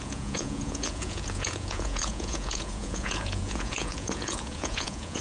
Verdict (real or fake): fake